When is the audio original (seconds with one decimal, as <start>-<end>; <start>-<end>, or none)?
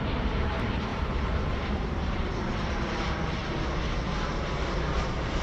0.9-1.7; 3.4-4.9